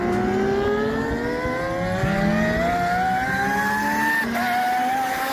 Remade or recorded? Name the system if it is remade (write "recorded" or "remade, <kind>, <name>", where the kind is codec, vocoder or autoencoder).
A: recorded